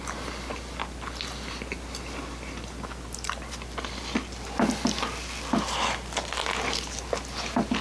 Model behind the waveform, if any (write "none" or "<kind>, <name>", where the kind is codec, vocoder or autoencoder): none